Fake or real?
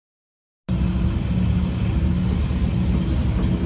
real